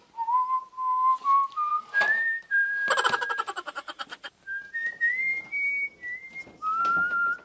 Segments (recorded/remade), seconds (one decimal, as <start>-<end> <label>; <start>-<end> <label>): 0.0-1.7 recorded; 1.7-4.5 remade; 4.5-7.4 recorded